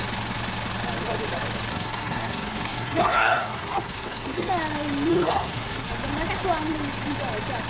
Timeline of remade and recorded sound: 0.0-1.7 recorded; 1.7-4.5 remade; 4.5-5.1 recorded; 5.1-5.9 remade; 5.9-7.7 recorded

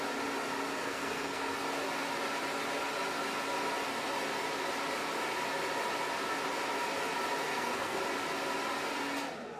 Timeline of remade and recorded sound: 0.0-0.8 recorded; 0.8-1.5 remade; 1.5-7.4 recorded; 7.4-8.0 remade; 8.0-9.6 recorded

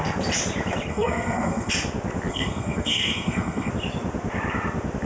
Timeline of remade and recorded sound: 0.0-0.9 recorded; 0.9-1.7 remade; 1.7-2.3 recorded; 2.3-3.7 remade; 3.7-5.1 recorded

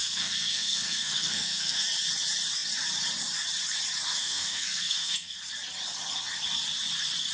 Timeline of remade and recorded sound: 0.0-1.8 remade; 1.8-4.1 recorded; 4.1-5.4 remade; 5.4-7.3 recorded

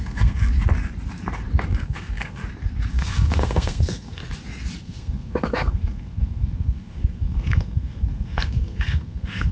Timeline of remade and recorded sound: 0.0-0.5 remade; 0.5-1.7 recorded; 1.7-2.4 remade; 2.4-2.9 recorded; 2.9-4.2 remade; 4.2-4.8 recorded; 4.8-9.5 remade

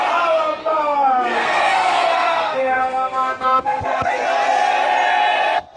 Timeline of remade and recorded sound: 0.0-0.6 recorded; 0.6-4.1 remade; 4.1-5.8 recorded